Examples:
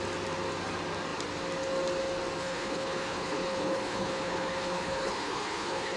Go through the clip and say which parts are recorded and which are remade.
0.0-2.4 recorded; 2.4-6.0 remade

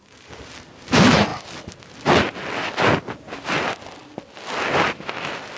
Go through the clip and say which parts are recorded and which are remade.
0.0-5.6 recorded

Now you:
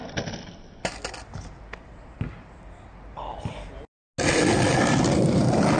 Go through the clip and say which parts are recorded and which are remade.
0.0-5.8 recorded

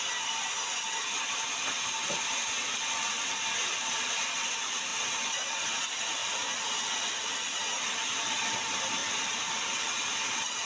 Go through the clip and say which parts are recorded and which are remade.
0.0-9.0 recorded; 9.0-9.6 remade; 9.6-10.7 recorded

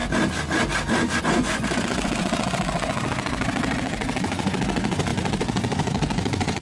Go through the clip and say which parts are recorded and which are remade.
0.0-1.2 recorded; 1.2-6.6 remade

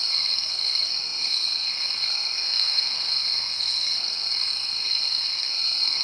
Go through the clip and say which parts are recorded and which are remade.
0.0-6.0 remade